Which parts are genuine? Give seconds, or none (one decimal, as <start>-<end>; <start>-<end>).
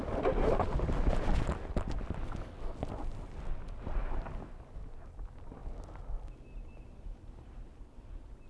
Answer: 0.0-8.5